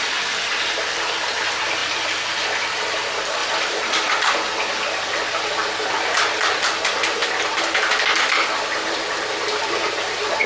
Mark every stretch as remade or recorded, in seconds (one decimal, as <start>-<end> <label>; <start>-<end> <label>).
0.0-7.2 remade; 7.2-8.2 recorded; 8.2-10.5 remade

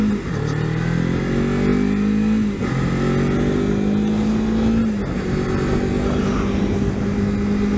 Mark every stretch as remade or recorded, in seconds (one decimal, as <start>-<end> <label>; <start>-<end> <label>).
0.0-7.8 recorded

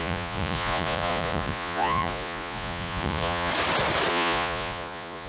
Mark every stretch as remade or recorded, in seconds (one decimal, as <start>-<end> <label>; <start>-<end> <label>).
0.0-3.5 remade; 3.5-4.1 recorded; 4.1-5.3 remade

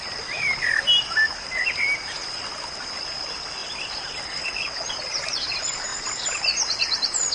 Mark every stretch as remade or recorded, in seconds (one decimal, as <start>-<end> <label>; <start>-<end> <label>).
0.0-2.2 recorded; 2.2-3.2 remade; 3.2-3.6 recorded; 3.6-4.2 remade; 4.2-5.9 recorded; 5.9-7.3 remade

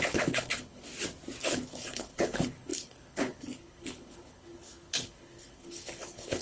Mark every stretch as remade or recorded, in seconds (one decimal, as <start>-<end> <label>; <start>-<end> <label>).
0.0-0.9 remade; 0.9-1.4 recorded; 1.4-6.4 remade